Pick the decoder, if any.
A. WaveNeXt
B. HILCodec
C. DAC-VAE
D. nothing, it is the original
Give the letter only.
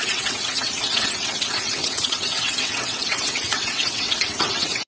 A